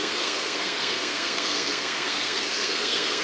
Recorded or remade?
remade